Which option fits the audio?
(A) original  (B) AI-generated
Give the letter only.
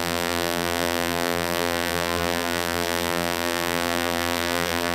B